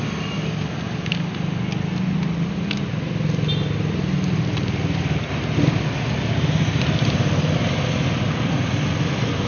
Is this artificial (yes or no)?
no